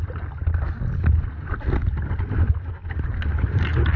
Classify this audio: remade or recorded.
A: recorded